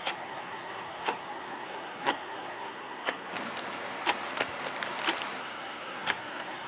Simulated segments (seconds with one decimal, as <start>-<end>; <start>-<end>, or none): 0.0-3.3; 5.4-6.7